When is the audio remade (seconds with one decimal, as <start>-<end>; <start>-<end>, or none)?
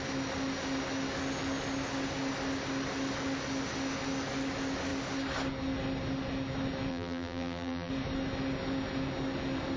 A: 6.9-7.9